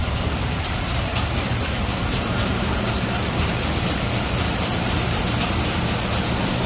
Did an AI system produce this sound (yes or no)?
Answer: yes